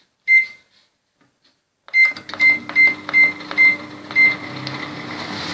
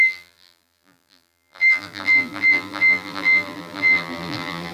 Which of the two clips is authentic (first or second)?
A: first